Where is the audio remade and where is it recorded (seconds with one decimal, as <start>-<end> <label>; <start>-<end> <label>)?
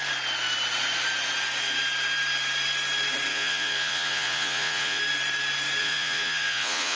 0.0-3.3 recorded; 3.3-5.0 remade; 5.0-5.8 recorded; 5.8-7.0 remade